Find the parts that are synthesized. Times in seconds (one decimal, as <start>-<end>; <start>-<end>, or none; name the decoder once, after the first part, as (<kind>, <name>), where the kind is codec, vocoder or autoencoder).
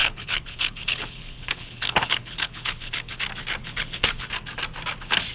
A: 0.0-3.2 (codec, HILCodec); 3.6-4.3